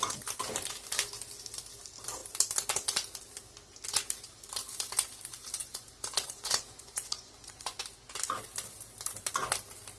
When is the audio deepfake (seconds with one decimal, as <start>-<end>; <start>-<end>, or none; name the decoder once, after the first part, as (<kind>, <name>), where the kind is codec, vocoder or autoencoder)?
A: 5.6-7.8 (vocoder, Vocos)

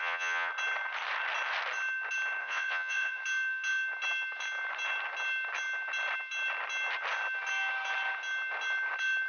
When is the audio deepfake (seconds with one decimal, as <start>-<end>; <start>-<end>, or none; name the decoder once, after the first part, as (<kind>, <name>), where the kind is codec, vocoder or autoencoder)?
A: 0.0-0.5 (vocoder, Vocos); 2.4-3.2

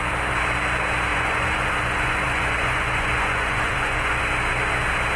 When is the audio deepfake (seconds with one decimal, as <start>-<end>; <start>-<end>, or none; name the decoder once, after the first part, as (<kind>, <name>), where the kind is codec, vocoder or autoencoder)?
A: 1.1-4.2 (vocoder, Vocos)